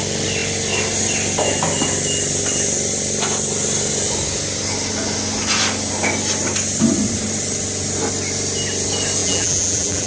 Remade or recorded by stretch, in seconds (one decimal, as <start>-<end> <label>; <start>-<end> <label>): 0.0-9.2 recorded; 9.2-10.1 remade